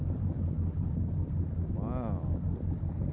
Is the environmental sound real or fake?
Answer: real